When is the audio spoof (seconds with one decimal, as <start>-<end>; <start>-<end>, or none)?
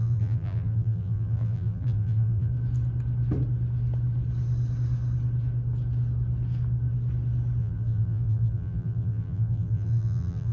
0.0-2.5; 7.6-10.5